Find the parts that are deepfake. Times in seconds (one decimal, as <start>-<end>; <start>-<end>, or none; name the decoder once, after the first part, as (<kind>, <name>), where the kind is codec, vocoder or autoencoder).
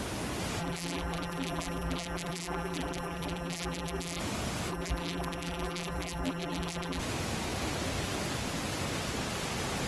0.6-4.2 (vocoder, BigVGAN v2); 4.7-7.0